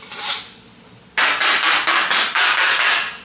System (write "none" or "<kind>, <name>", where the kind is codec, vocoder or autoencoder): none